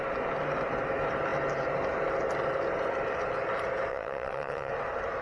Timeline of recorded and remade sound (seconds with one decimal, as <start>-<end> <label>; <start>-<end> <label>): 0.0-3.9 recorded; 3.9-4.7 remade; 4.7-5.2 recorded